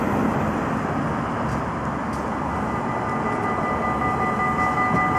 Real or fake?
real